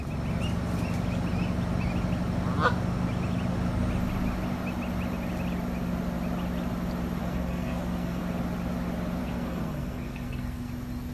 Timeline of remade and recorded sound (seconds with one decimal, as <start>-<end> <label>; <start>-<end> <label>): 0.0-7.2 recorded; 7.2-8.2 remade; 8.2-9.2 recorded; 9.2-10.7 remade; 10.7-11.1 recorded